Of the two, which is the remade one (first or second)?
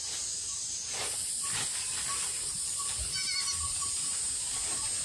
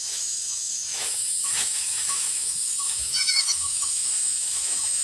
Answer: second